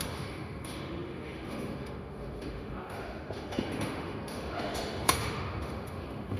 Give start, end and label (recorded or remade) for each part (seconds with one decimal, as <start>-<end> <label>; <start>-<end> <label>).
0.0-6.4 remade